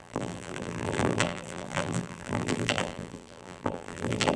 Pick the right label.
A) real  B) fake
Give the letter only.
B